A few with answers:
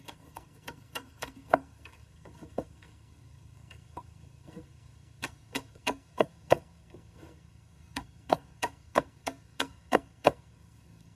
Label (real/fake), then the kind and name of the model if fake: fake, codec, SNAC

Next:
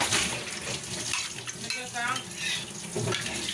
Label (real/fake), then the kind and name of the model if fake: real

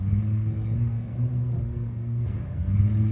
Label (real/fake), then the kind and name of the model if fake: fake, codec, SNAC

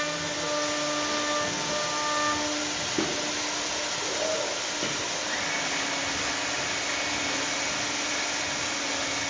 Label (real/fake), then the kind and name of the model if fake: real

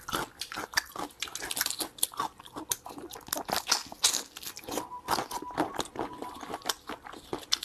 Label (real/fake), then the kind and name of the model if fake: real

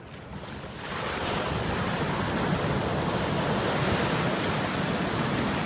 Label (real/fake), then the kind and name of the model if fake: real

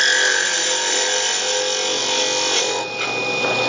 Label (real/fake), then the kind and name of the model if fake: real